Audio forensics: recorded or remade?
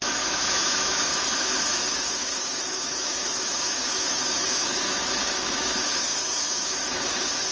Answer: remade